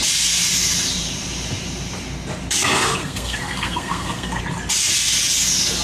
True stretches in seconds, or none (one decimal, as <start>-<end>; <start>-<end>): 0.0-3.0; 4.4-5.8